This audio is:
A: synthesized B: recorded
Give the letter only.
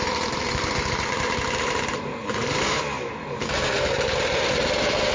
A